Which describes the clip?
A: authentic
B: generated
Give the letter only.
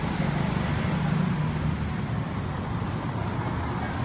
A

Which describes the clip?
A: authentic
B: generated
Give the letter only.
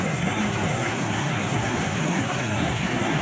B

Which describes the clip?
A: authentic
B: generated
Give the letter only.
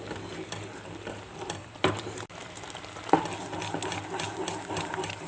A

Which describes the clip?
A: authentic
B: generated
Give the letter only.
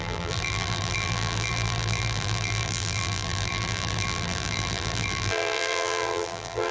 B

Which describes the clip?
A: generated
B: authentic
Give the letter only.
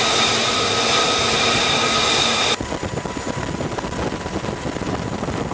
B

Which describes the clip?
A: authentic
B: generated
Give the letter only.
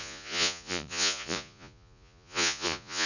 B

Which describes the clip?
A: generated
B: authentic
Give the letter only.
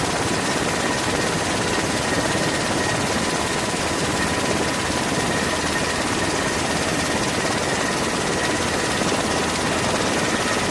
B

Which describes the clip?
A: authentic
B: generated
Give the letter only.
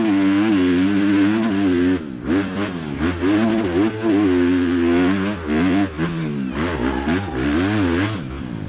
A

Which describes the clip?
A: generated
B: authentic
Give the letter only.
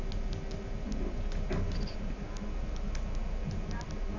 B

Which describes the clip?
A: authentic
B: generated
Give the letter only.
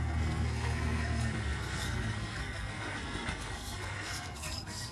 B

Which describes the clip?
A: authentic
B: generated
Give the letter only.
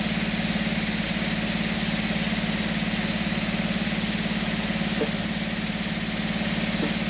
A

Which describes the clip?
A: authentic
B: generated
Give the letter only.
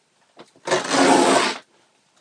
A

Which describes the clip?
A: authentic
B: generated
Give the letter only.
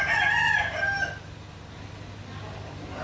A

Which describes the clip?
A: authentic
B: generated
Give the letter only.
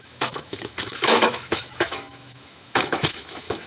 B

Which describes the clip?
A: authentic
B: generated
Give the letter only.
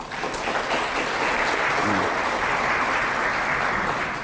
A